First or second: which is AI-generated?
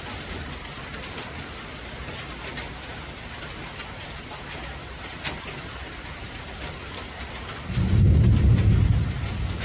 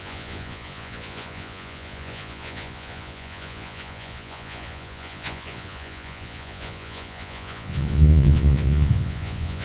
second